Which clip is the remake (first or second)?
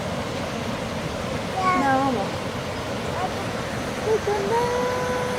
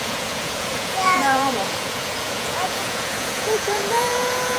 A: second